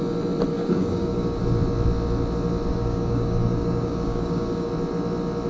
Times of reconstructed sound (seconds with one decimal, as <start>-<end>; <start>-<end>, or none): 0.5-1.4; 2.7-4.7